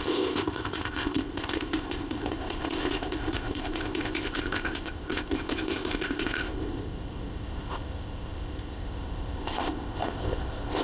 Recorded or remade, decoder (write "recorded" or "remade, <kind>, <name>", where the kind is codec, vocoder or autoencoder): remade, codec, ZipCodec